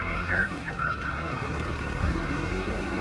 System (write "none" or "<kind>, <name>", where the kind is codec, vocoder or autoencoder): codec, SNAC